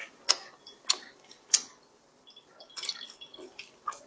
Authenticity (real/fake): real